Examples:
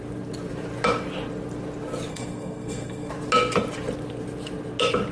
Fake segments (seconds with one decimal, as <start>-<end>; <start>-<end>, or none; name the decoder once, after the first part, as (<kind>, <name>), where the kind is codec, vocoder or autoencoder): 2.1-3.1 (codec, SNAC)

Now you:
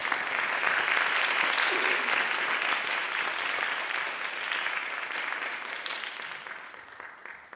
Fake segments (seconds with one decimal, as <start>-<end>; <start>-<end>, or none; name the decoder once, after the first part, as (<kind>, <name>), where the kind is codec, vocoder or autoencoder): none

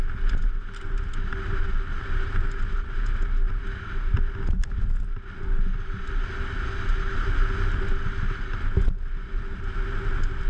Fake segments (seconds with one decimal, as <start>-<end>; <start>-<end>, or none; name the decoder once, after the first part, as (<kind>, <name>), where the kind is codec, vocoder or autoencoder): none

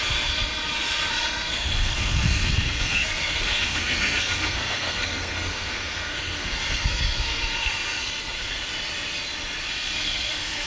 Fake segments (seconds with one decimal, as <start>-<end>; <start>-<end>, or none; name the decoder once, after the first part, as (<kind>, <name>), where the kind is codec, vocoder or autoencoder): 0.0-8.7 (codec, SNAC); 9.7-10.7

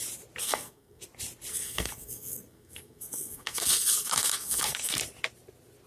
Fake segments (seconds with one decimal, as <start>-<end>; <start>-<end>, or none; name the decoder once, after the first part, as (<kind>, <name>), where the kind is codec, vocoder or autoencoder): 0.4-1.0 (codec, SNAC); 1.5-5.0

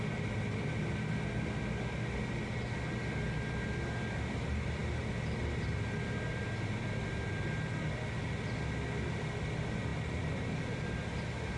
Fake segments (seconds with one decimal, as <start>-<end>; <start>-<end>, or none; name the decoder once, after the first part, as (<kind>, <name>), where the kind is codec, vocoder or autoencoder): none